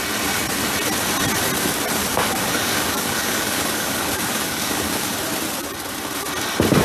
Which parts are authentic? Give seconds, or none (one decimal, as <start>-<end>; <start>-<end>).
0.0-2.1; 5.1-6.8